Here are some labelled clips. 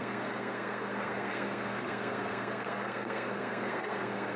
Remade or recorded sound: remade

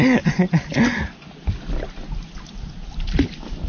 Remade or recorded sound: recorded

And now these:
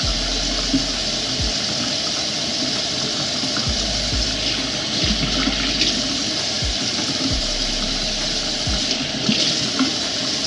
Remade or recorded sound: recorded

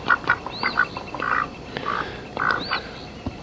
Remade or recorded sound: recorded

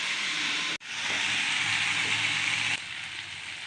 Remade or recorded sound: recorded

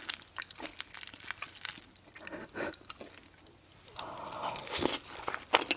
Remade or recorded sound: recorded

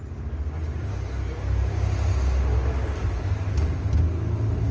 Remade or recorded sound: recorded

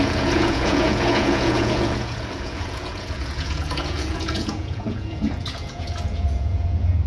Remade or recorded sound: remade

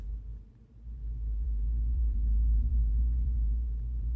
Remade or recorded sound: remade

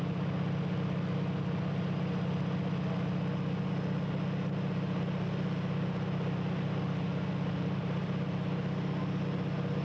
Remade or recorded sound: recorded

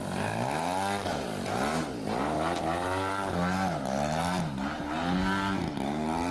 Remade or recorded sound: recorded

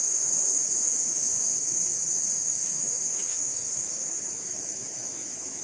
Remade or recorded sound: remade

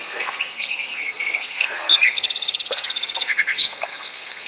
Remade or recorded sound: remade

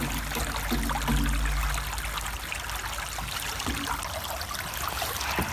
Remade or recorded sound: recorded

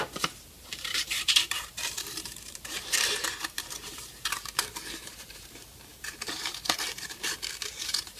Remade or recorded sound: remade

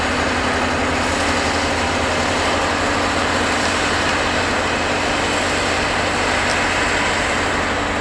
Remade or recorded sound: recorded